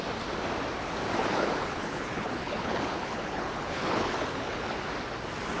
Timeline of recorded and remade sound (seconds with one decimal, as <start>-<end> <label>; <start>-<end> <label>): 0.0-1.3 recorded; 1.3-4.7 remade; 4.7-5.6 recorded